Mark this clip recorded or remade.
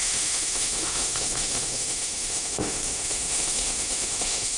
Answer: remade